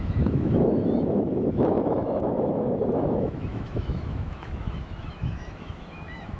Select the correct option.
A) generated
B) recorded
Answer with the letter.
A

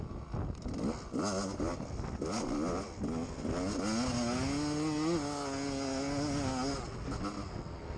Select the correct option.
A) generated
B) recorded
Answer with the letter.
B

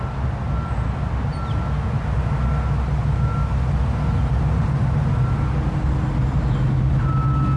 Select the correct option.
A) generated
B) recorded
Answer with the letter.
B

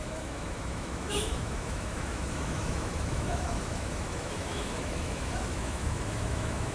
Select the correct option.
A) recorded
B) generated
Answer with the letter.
B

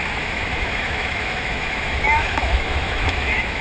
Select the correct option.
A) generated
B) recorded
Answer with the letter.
A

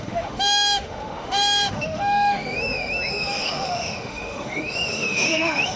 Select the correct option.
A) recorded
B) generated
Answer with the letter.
B